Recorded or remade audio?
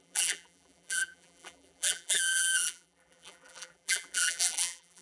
remade